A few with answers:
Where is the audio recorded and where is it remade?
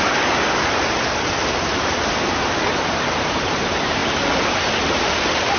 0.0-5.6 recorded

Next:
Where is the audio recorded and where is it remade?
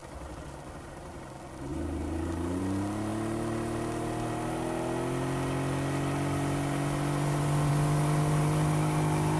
0.0-1.2 remade; 1.2-1.7 recorded; 1.7-2.6 remade; 2.6-9.4 recorded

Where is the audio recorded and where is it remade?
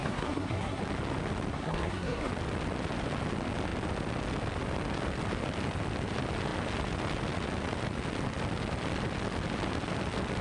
0.0-0.8 remade; 0.8-1.5 recorded; 1.5-2.3 remade; 2.3-10.4 recorded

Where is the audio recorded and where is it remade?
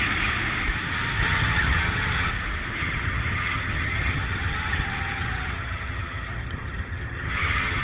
0.0-1.2 recorded; 1.2-2.3 remade; 2.3-2.8 recorded; 2.8-7.8 remade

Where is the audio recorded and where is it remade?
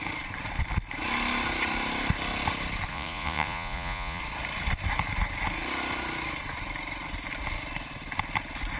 0.0-2.9 recorded; 2.9-4.2 remade; 4.2-8.8 recorded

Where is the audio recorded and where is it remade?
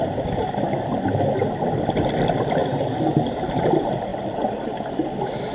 0.0-5.5 recorded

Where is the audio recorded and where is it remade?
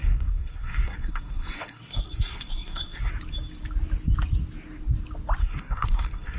0.0-3.1 remade; 3.1-5.4 recorded; 5.4-6.4 remade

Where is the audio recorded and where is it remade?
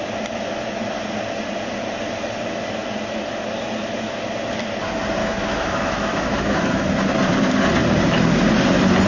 0.0-5.2 recorded; 5.2-6.9 remade; 6.9-9.1 recorded